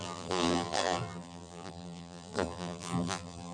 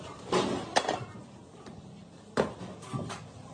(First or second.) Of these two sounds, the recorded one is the second